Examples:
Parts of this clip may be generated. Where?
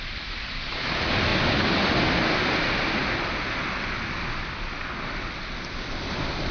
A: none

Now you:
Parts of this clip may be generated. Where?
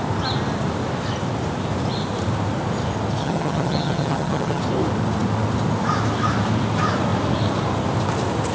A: 3.2-4.6 (vocoder, HiFi-GAN)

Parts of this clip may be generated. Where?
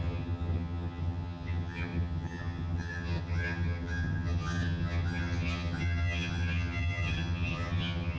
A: 0.0-8.2 (vocoder, HiFi-GAN)